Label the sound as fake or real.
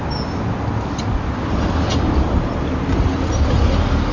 real